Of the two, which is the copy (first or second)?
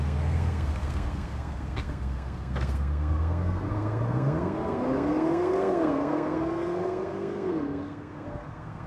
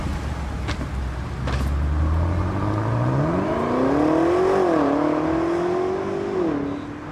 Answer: first